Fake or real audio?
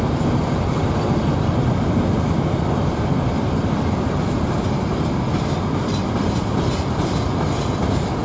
real